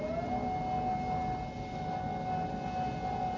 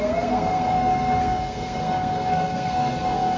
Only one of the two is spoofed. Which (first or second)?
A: second